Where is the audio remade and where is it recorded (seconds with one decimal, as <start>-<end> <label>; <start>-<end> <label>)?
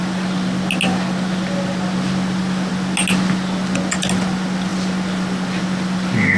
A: 0.0-6.4 recorded